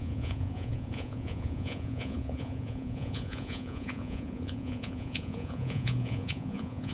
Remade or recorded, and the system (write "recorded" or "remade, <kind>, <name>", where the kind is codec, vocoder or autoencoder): remade, vocoder, Vocos